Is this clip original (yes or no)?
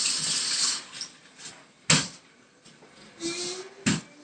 yes